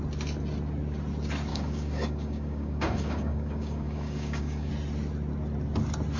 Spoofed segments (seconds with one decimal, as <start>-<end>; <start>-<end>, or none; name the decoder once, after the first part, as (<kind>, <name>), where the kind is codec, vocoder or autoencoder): 1.5-4.7 (codec, DAC)